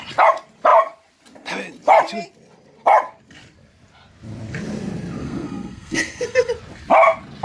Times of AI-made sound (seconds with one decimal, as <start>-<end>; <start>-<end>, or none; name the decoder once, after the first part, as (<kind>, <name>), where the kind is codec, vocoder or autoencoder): 5.2-6.5 (codec, SNAC)